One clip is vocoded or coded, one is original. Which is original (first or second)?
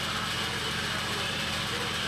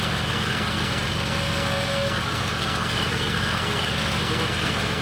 first